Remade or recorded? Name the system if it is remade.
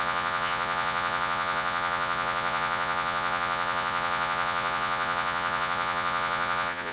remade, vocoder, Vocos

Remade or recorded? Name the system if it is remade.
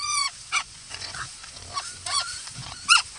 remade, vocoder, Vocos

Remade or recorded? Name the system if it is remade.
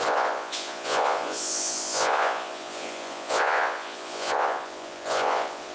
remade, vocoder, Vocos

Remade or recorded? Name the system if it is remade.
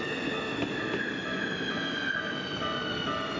recorded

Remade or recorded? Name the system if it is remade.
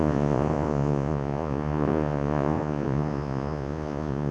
remade, vocoder, Vocos